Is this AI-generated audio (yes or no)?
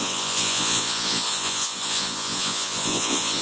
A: yes